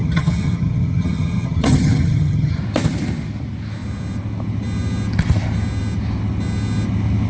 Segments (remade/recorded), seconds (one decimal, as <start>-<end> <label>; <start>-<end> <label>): 0.0-2.6 remade; 2.6-7.3 recorded